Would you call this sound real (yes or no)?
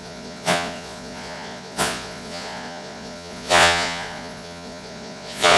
no